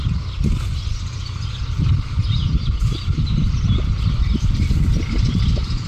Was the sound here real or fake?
real